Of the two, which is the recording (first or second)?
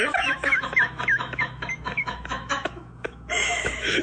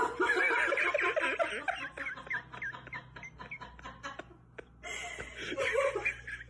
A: second